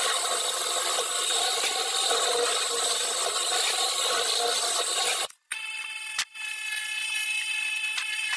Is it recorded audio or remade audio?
recorded